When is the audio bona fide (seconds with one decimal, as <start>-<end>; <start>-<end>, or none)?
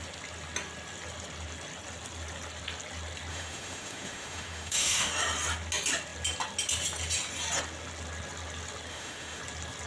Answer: 0.0-3.3; 5.1-8.9; 9.4-9.9